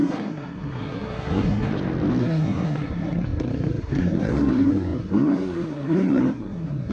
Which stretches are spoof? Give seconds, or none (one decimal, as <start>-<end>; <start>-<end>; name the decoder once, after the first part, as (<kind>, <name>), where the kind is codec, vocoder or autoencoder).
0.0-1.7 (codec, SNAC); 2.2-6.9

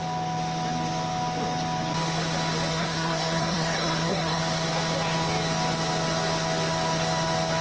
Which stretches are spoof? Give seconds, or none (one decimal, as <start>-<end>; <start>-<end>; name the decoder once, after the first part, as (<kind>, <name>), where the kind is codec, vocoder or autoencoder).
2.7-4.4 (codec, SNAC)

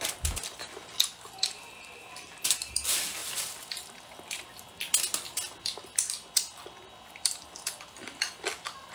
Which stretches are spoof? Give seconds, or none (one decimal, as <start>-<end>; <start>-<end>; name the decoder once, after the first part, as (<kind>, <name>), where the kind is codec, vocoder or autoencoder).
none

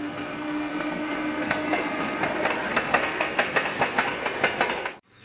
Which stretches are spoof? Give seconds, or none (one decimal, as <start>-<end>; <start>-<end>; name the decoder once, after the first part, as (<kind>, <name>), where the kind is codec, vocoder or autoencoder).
0.0-2.2 (codec, SNAC); 2.7-4.2; 4.8-5.2

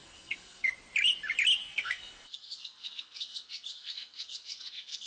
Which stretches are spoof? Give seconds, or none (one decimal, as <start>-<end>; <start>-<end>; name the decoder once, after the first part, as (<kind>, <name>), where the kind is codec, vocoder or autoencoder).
0.0-0.7 (codec, SNAC); 1.6-5.1